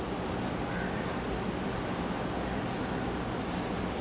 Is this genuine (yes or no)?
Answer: yes